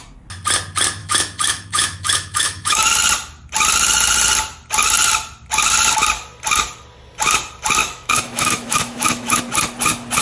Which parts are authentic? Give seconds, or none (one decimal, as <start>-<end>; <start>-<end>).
0.0-1.0; 2.9-7.8; 9.4-10.2